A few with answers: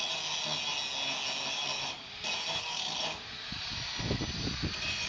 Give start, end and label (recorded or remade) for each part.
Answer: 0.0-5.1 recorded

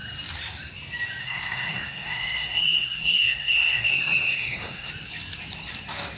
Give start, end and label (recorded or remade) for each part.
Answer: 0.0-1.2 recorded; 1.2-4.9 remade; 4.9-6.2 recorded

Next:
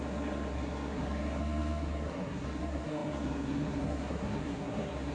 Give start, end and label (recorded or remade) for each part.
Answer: 0.0-5.1 remade